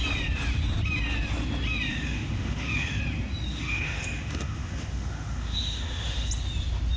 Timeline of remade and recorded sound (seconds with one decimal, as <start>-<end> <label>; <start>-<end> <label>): 0.0-1.9 recorded; 1.9-3.0 remade; 3.0-3.5 recorded; 3.5-6.3 remade; 6.3-7.0 recorded